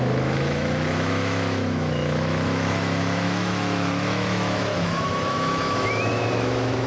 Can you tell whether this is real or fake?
fake